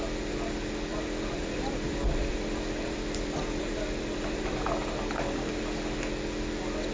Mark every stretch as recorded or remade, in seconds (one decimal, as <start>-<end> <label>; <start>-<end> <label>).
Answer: 0.0-0.9 recorded; 0.9-4.7 remade; 4.7-6.9 recorded